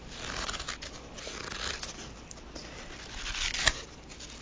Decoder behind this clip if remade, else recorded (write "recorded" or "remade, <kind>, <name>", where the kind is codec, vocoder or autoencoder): recorded